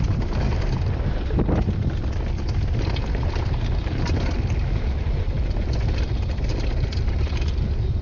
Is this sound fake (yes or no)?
no